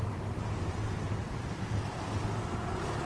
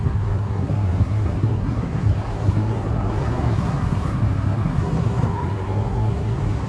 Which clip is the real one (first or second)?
first